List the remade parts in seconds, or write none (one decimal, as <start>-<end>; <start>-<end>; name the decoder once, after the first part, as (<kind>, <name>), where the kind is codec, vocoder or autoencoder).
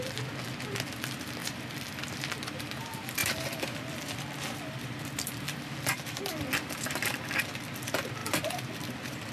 1.4-2.8 (vocoder, BigVGAN v2); 3.2-6.3; 8.2-9.3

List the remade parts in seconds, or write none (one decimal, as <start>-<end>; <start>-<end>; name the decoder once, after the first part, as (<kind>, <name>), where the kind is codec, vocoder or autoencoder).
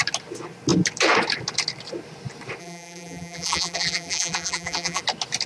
2.6-5.0 (vocoder, BigVGAN v2)